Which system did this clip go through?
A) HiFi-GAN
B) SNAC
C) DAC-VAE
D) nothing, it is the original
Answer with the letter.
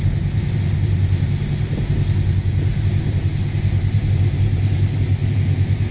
D